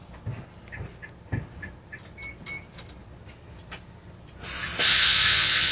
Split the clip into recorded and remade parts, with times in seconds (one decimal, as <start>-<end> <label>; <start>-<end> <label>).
0.0-4.9 recorded; 4.9-5.7 remade